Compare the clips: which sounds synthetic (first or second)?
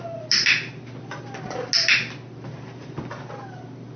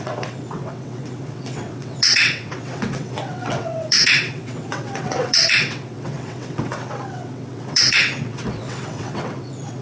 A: second